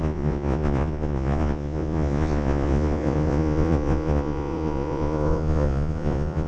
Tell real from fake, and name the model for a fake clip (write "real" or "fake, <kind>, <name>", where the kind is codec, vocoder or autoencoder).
fake, vocoder, Vocos